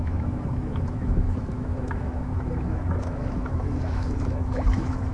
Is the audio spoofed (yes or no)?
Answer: yes